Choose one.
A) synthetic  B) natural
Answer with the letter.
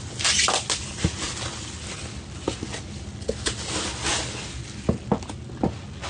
B